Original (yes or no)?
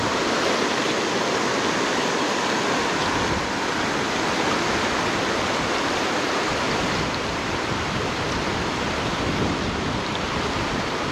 yes